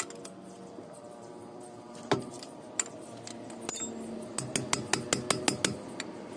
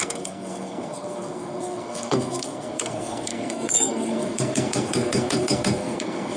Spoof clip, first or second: second